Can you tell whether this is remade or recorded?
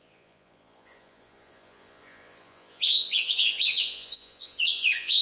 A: remade